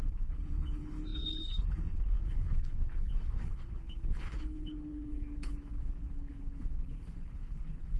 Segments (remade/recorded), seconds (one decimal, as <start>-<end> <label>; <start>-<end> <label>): 0.0-8.0 remade